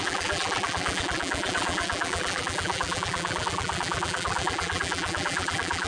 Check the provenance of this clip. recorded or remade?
remade